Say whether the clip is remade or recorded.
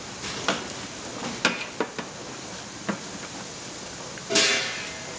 recorded